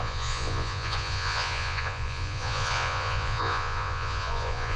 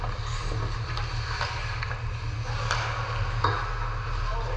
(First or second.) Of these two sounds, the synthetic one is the first